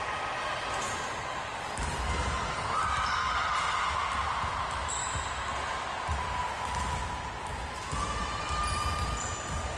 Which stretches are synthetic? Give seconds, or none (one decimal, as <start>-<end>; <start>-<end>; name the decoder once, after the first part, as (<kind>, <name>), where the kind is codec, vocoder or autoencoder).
none

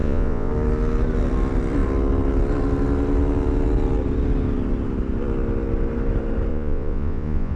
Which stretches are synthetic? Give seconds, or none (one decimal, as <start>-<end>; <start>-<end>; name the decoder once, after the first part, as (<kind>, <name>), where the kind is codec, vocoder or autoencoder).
0.0-0.5 (vocoder, Vocos); 6.5-7.6

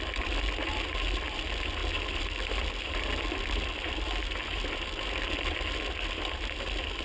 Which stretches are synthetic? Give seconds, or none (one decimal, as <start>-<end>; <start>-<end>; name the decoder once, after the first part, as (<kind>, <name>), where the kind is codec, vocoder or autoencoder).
none